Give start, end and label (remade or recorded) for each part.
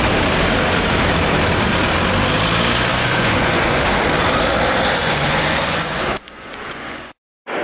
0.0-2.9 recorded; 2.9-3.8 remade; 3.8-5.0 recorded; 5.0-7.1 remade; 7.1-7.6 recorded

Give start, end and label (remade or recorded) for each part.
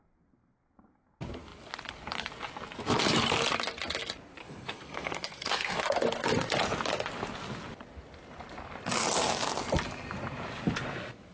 0.0-4.4 recorded; 4.4-5.8 remade; 5.8-11.3 recorded